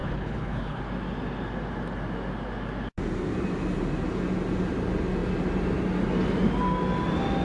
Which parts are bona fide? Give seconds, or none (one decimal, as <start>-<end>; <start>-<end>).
0.8-7.4